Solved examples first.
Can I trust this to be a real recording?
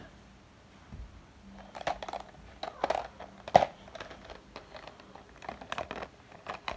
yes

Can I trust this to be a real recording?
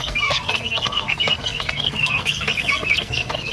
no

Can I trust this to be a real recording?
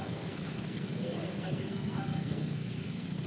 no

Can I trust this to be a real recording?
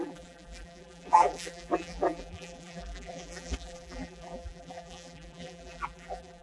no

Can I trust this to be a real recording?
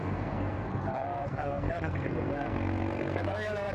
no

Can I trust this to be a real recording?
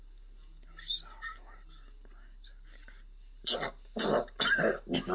yes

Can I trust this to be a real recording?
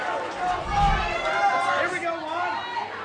yes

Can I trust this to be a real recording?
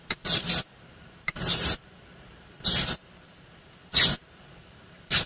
no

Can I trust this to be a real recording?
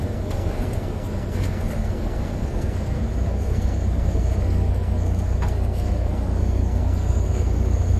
no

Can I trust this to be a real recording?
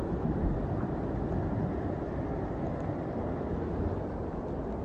yes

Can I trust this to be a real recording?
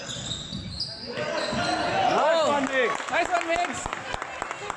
yes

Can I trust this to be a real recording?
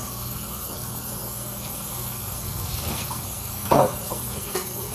no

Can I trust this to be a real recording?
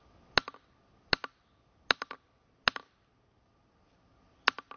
yes